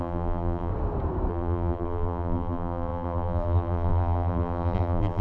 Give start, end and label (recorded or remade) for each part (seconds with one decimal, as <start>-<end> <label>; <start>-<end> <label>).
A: 0.0-0.7 remade; 0.7-1.3 recorded; 1.3-5.2 remade